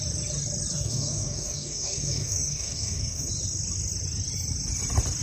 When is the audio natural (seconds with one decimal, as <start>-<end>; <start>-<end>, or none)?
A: 0.0-0.7; 3.3-5.2